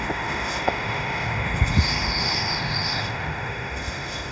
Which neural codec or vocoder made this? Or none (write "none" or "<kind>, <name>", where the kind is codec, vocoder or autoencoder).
autoencoder, DAC-VAE